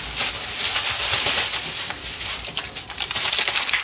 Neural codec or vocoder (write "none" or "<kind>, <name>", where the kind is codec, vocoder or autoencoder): none